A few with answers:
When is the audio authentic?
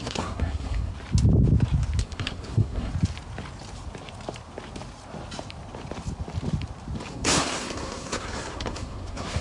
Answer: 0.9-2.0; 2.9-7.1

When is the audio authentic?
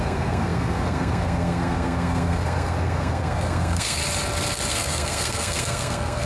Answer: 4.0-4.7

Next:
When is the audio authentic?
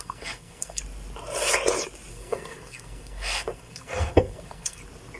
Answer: 0.8-2.1; 4.8-5.2